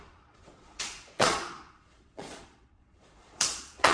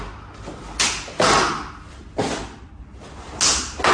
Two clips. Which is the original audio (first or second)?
second